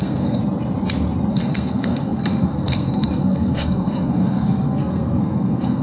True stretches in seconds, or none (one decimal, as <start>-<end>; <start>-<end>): 0.4-1.3